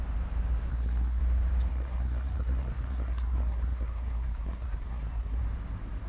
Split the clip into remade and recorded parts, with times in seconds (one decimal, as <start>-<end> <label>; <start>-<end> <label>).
0.0-0.7 recorded; 0.7-1.2 remade; 1.2-1.7 recorded; 1.7-5.4 remade; 5.4-6.1 recorded